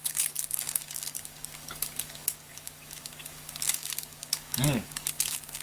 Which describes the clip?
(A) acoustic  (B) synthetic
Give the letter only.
B